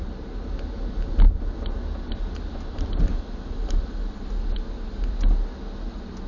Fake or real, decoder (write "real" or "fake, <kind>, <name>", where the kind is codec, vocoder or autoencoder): real